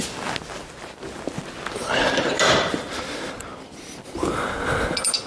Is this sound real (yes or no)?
yes